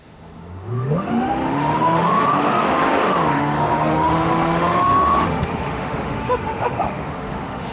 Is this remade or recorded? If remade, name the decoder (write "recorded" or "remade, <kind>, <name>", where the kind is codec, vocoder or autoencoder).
remade, autoencoder, DAC-VAE